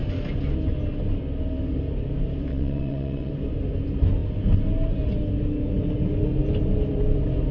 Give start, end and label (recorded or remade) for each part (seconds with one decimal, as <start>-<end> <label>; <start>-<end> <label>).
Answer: 0.0-2.5 recorded; 2.5-3.3 remade; 3.3-7.5 recorded